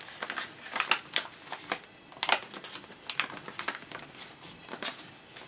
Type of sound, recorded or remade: recorded